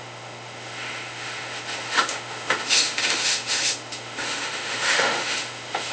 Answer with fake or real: fake